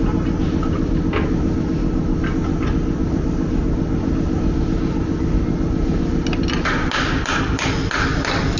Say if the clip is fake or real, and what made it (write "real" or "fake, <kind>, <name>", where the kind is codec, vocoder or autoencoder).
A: real